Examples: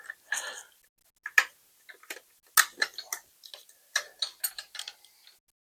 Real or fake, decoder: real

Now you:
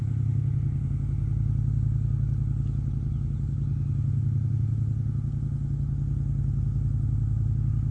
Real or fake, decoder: real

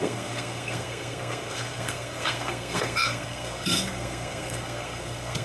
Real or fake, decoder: fake, codec, SNAC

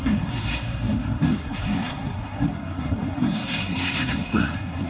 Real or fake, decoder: fake, codec, SNAC